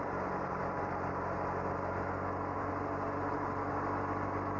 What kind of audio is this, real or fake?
real